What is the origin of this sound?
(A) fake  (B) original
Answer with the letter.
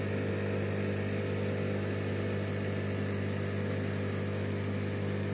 A